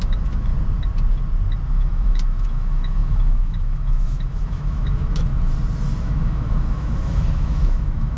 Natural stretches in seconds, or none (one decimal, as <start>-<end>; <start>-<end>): 0.5-1.7; 5.3-6.0